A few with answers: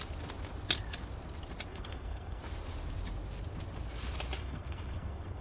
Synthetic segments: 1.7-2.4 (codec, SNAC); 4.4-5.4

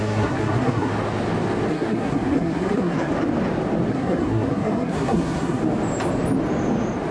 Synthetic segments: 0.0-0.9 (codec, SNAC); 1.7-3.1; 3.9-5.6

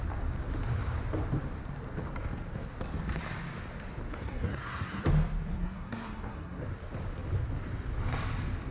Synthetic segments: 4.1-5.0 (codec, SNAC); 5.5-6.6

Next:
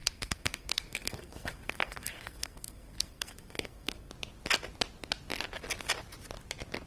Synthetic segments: 0.0-4.1 (codec, SNAC)